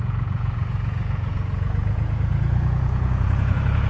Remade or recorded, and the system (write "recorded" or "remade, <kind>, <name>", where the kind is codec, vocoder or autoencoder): remade, vocoder, Vocos